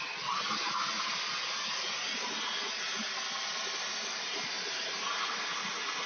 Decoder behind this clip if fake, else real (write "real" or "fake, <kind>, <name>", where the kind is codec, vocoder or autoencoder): real